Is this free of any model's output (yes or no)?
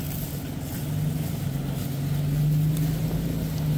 yes